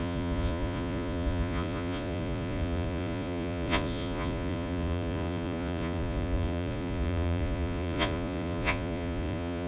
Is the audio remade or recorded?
remade